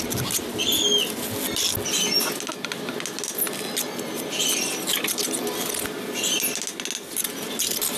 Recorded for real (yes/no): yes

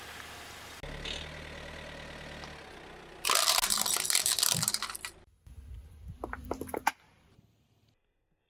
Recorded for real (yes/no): yes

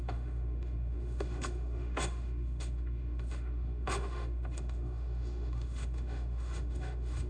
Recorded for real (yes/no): no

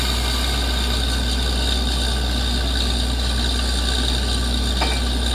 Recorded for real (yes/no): yes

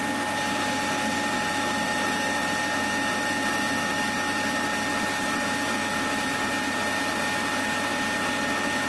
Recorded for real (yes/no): yes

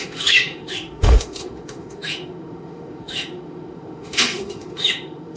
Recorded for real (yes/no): no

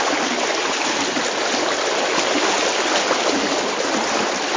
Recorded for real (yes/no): yes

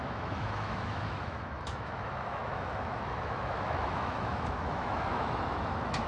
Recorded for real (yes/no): no